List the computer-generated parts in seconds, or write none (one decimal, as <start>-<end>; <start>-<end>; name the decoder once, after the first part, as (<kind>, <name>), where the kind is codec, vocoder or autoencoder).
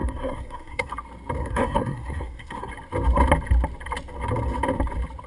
0.0-0.9 (codec, SNAC); 1.4-2.7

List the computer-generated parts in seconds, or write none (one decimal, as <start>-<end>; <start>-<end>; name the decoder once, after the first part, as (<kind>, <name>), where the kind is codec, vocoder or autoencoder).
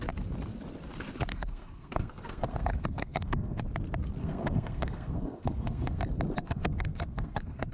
1.3-3.6 (codec, SNAC); 4.2-6.0; 6.4-7.7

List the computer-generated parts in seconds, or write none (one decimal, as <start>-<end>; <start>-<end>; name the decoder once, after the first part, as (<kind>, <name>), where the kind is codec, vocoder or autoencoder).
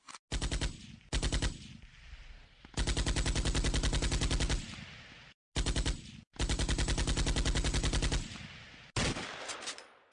none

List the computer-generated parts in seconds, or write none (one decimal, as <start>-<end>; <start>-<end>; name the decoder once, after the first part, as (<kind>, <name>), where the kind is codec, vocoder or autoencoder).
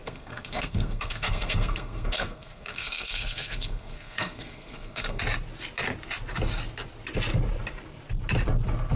0.0-5.2 (codec, SNAC)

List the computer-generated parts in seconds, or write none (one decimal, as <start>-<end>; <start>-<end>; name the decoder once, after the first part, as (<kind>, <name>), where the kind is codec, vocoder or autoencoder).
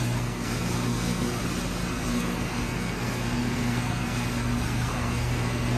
0.0-1.4 (codec, SNAC); 1.9-5.8